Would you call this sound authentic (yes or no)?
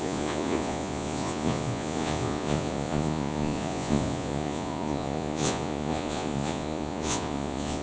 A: no